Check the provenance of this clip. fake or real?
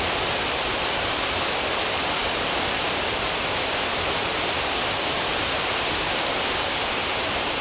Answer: fake